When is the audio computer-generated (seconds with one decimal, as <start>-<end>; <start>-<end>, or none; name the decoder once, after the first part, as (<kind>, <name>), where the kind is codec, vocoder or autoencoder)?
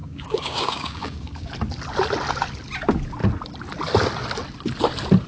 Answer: 0.0-1.5 (codec, DAC)